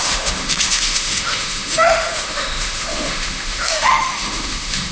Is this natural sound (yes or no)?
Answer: no